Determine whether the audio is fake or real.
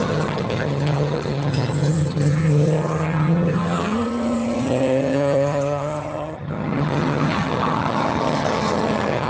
fake